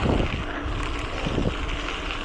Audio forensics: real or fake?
real